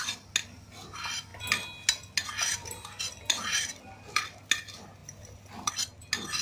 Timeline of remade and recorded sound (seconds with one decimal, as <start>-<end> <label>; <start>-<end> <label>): 0.0-6.4 recorded